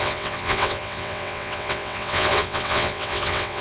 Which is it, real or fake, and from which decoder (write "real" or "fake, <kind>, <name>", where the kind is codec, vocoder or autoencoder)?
fake, vocoder, WaveNeXt